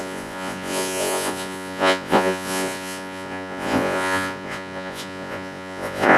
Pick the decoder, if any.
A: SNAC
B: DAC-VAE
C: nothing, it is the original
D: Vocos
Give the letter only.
D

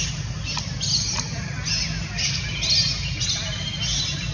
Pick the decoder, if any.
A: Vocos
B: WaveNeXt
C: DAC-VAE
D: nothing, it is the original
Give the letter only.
D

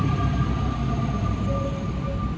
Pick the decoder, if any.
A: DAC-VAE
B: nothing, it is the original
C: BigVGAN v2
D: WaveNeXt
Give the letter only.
B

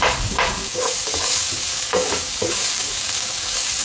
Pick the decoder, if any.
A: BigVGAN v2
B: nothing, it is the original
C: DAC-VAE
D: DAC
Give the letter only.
D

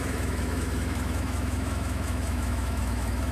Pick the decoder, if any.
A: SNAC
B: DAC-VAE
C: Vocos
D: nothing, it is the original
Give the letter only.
B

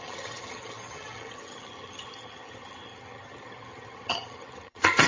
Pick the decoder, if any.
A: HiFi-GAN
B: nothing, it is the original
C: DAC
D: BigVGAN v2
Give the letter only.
A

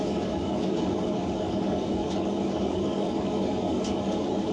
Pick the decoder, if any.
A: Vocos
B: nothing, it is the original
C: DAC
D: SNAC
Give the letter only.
C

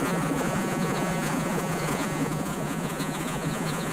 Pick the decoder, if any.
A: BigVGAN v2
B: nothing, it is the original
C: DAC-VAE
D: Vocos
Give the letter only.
D